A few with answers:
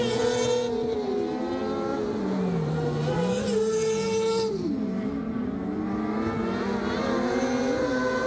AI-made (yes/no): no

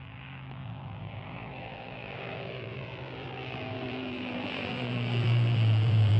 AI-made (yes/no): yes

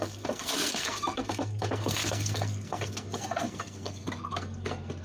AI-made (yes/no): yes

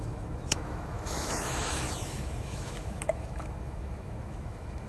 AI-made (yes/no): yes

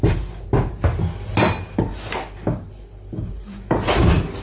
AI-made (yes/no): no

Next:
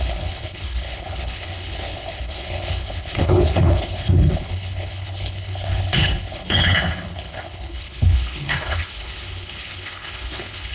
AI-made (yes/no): yes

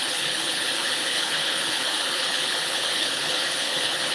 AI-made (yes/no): yes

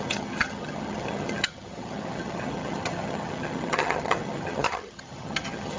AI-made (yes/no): yes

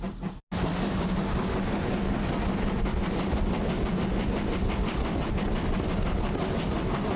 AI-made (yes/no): no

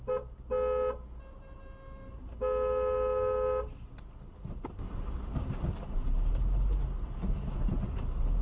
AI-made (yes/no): no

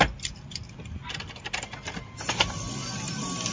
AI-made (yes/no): no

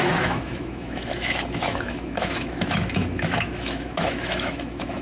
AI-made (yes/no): yes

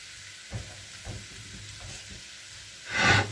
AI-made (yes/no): no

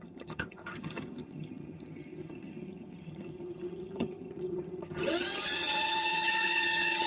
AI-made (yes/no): yes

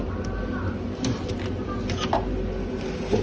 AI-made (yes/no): no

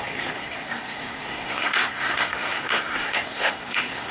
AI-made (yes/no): yes